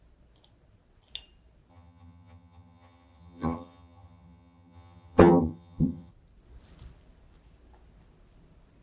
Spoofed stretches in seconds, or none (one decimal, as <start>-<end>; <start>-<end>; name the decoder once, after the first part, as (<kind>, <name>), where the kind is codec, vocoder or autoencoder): 1.7-6.1 (vocoder, HiFi-GAN)